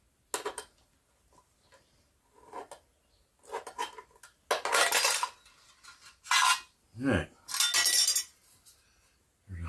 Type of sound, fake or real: real